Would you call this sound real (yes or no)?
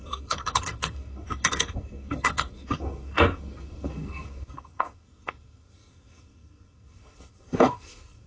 no